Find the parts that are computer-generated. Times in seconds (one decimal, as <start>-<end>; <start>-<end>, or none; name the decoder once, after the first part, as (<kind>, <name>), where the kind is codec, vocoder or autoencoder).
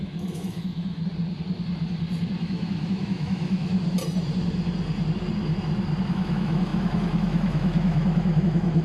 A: 0.0-1.0 (autoencoder, DAC-VAE); 2.4-3.7; 6.1-8.8